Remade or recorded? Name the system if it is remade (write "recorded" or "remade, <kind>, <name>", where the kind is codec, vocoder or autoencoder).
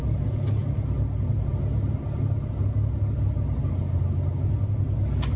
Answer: recorded